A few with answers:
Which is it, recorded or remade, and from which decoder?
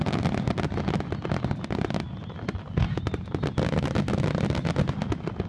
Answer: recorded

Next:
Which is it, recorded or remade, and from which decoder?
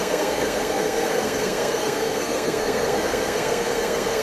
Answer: remade, codec, SNAC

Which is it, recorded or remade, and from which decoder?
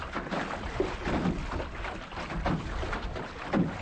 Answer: recorded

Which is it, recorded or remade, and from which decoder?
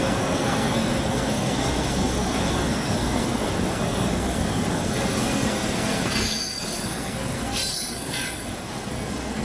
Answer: remade, codec, SNAC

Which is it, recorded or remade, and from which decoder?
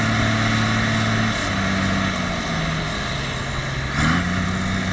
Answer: recorded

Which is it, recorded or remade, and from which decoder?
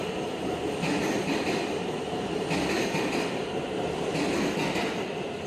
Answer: recorded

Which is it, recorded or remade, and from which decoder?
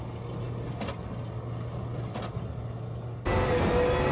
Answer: recorded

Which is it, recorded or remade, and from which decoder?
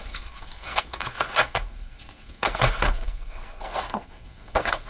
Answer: remade, codec, SNAC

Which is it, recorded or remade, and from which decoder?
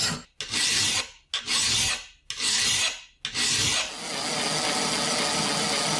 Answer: recorded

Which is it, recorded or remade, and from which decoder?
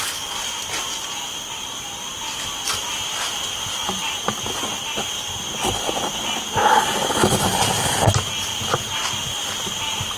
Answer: recorded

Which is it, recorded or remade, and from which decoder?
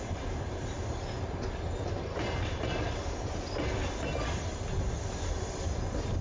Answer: recorded